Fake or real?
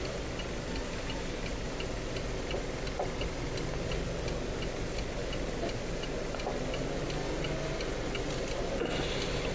real